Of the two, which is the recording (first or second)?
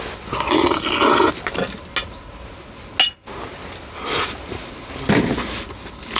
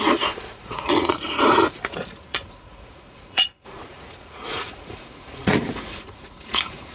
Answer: first